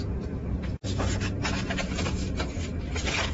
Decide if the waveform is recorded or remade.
recorded